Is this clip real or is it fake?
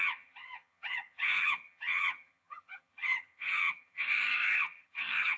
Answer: fake